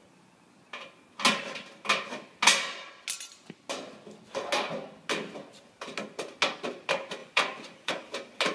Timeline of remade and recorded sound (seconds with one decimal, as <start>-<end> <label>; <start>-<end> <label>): 0.0-7.2 recorded; 7.2-7.9 remade; 7.9-8.5 recorded